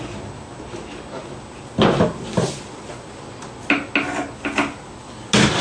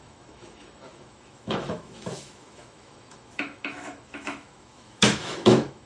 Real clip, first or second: first